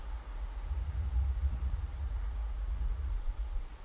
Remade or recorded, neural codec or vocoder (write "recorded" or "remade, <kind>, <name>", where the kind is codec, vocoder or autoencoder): remade, vocoder, Vocos